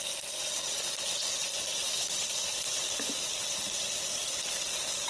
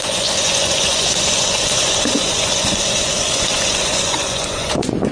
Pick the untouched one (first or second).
first